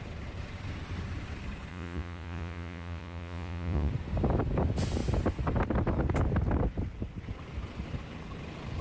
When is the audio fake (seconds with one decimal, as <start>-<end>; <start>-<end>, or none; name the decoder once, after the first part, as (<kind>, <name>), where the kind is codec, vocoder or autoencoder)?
1.7-3.9 (vocoder, Vocos)